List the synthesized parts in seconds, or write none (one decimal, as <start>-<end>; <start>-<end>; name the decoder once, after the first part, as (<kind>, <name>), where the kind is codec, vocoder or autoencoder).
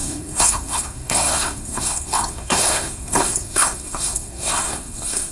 0.0-5.3 (codec, SNAC)